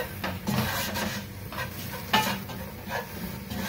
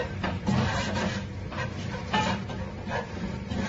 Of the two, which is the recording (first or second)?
first